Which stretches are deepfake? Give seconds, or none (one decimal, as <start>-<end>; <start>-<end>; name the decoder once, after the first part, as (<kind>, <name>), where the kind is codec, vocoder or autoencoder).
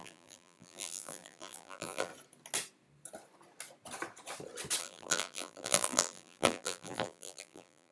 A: 0.0-2.1 (vocoder, BigVGAN v2); 4.8-7.9